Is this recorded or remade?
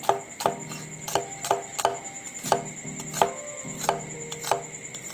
recorded